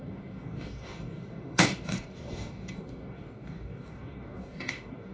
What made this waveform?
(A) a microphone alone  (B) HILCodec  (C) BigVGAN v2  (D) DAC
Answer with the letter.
D